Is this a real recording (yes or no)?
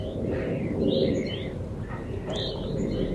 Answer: no